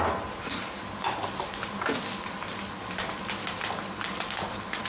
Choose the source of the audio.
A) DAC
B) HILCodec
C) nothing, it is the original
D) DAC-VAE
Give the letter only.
C